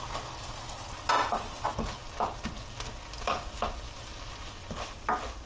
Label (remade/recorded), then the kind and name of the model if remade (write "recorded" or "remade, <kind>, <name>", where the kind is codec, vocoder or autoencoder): recorded